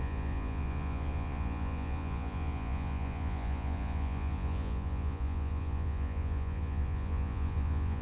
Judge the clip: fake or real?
fake